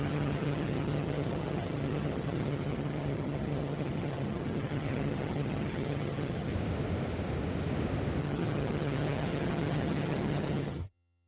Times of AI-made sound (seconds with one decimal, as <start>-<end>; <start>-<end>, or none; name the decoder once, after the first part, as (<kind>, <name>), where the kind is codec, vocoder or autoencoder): 0.0-6.5 (vocoder, HiFi-GAN); 8.2-11.3